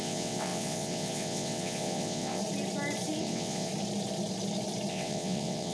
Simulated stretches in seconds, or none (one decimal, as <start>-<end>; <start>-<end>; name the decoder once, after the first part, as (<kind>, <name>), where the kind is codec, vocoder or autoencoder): 0.0-2.4 (vocoder, WaveNeXt); 3.2-3.7; 4.9-5.7